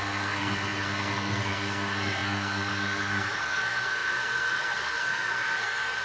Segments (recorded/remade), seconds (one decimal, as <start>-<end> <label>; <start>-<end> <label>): 0.0-6.0 remade